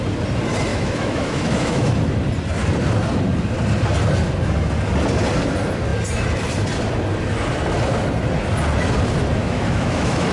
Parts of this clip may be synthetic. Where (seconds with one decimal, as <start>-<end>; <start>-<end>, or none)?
0.7-1.9; 9.4-10.3